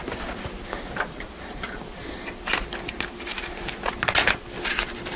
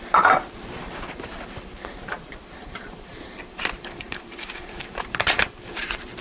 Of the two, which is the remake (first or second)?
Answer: second